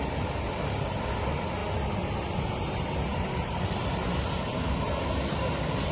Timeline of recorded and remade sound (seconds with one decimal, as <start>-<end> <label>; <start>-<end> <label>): 0.0-3.1 recorded; 3.1-3.7 remade; 3.7-5.9 recorded